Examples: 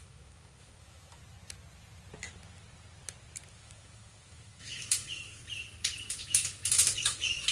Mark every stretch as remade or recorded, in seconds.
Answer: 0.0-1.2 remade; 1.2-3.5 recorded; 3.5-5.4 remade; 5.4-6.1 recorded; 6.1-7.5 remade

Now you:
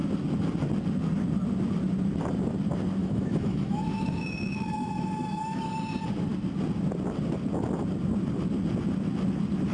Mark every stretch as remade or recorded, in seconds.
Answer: 0.0-3.0 recorded; 3.0-5.7 remade; 5.7-9.7 recorded

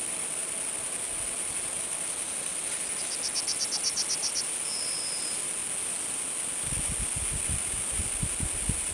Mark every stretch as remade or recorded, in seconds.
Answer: 0.0-8.9 recorded

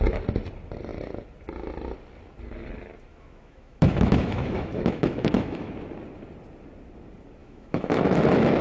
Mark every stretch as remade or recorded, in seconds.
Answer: 0.0-3.1 recorded; 3.1-5.7 remade; 5.7-7.4 recorded; 7.4-8.2 remade; 8.2-8.6 recorded